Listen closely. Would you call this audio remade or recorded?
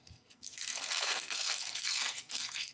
remade